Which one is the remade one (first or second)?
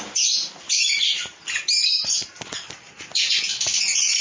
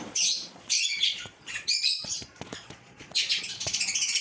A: second